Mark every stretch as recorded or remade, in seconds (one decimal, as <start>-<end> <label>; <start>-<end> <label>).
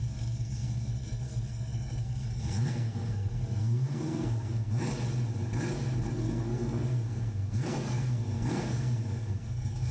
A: 0.0-4.9 remade; 4.9-6.1 recorded; 6.1-9.9 remade